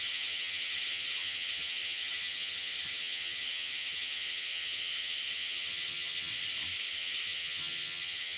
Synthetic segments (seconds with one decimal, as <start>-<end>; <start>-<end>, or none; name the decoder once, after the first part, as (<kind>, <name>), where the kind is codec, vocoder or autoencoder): 0.0-6.3 (vocoder, HiFi-GAN); 6.9-8.4